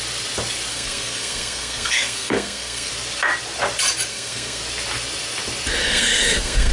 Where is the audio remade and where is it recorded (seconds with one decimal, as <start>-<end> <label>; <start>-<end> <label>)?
0.0-0.7 recorded; 0.7-2.9 remade; 2.9-4.1 recorded; 4.1-4.6 remade; 4.6-5.8 recorded; 5.8-6.7 remade